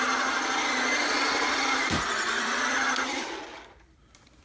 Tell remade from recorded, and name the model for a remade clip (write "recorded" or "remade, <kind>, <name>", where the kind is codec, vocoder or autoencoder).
remade, vocoder, BigVGAN v2